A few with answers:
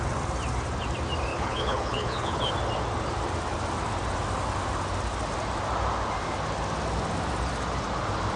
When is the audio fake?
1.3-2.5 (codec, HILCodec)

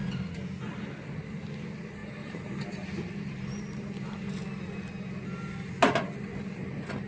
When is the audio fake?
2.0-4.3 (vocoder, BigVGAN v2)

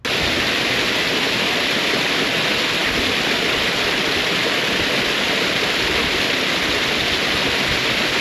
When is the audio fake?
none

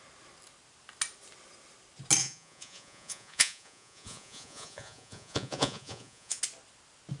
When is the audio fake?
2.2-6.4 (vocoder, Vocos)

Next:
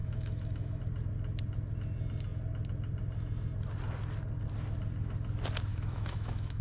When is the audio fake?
0.0-0.8 (autoencoder, DAC-VAE); 5.7-6.6